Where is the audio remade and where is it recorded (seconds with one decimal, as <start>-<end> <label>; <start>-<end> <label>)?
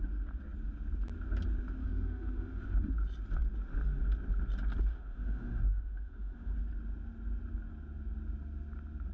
0.0-1.8 recorded; 1.8-2.9 remade; 2.9-4.9 recorded; 4.9-6.5 remade; 6.5-9.1 recorded